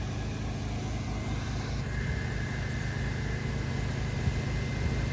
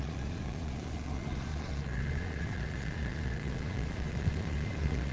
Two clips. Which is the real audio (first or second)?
first